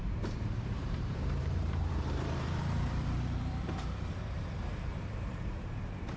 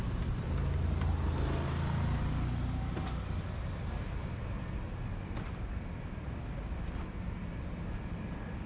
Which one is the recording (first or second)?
second